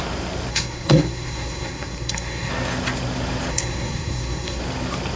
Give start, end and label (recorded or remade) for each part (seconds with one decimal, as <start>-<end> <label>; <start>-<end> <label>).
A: 0.0-0.5 recorded; 0.5-2.5 remade; 2.5-3.5 recorded; 3.5-4.6 remade; 4.6-5.2 recorded